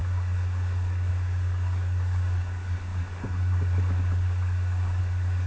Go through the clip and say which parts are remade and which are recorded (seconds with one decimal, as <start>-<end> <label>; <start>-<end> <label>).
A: 0.0-5.5 remade